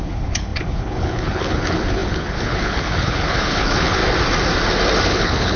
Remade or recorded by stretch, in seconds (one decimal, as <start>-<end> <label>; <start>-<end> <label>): 0.0-4.0 remade; 4.0-5.1 recorded; 5.1-5.6 remade